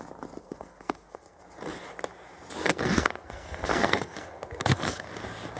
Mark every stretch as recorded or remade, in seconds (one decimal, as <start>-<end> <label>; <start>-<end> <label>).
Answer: 0.0-0.4 recorded; 0.4-1.4 remade; 1.4-2.6 recorded; 2.6-5.1 remade; 5.1-5.6 recorded